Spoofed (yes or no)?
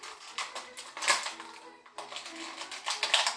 no